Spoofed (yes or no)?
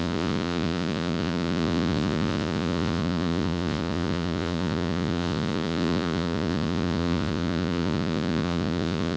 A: yes